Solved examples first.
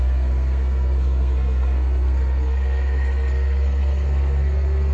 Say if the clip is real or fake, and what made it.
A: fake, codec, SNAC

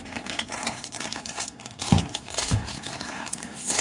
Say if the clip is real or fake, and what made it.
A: fake, codec, SNAC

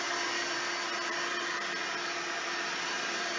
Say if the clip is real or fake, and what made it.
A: real